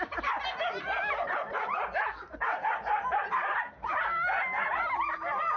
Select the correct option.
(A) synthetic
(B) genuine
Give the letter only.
B